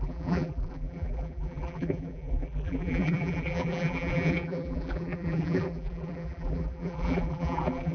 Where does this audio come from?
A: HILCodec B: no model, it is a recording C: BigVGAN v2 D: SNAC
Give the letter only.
C